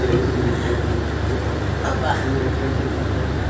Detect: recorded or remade recorded